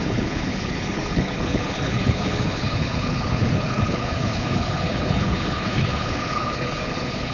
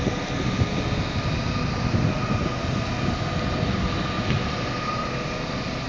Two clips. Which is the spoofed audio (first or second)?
first